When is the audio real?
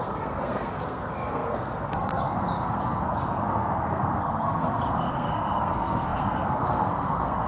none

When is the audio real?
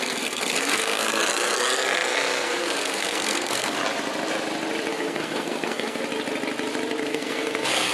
3.8-4.9; 6.0-7.0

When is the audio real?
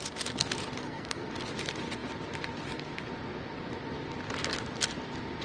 0.0-0.8; 1.3-5.4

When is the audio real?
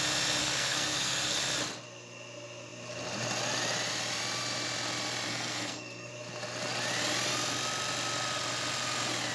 0.0-0.4; 1.4-5.3; 6.1-9.3